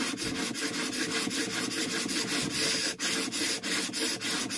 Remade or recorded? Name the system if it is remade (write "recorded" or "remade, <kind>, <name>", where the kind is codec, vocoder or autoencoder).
recorded